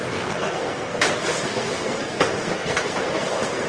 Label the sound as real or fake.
fake